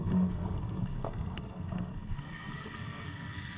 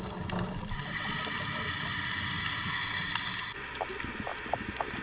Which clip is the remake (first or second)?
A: first